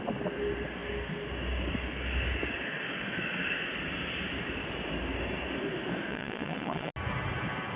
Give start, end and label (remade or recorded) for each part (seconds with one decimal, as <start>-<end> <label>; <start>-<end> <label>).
0.0-6.1 recorded; 6.1-6.9 remade; 6.9-7.8 recorded